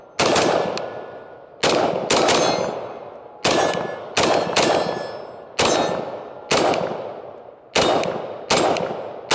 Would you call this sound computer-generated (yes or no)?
no